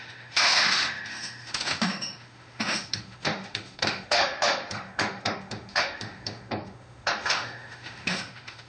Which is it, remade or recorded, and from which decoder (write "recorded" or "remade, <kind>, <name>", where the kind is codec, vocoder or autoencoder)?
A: remade, autoencoder, DAC-VAE